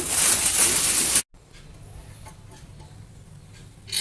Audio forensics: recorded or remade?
recorded